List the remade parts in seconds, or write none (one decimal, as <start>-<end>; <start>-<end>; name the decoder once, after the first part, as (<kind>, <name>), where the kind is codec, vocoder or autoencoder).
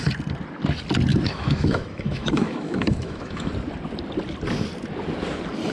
1.1-3.5 (autoencoder, DAC-VAE)